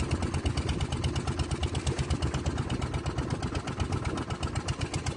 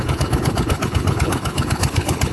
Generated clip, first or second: second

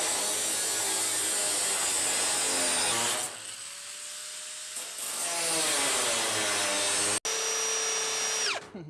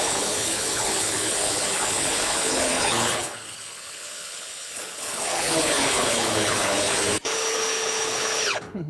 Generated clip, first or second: second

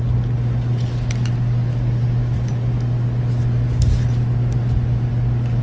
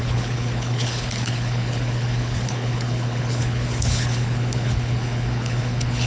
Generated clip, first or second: second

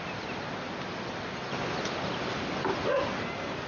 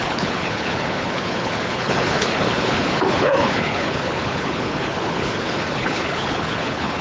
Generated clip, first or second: second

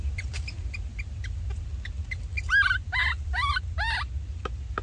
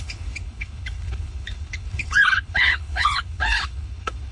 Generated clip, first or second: second